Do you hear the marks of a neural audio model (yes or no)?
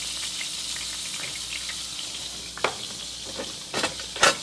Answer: no